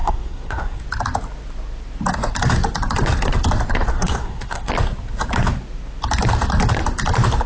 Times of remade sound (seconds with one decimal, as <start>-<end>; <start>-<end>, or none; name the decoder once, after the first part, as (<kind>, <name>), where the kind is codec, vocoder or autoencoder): 0.0-0.8 (codec, SNAC); 3.9-4.7